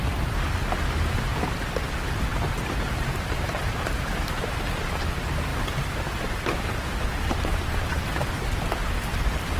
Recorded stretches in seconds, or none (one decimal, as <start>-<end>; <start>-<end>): 0.0-9.6